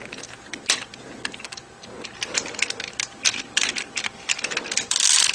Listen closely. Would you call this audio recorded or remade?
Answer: recorded